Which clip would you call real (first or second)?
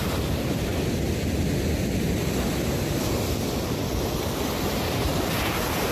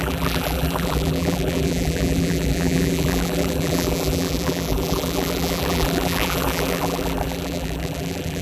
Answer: first